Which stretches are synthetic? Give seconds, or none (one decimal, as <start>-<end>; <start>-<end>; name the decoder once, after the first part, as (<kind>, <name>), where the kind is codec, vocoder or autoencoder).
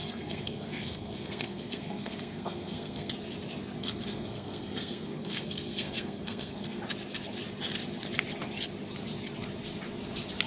0.0-3.1 (codec, SNAC); 3.8-6.8